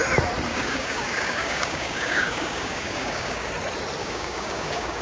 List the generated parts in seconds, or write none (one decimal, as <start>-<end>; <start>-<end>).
0.5-3.5; 4.0-5.0